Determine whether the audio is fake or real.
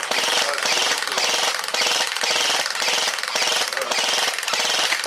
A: real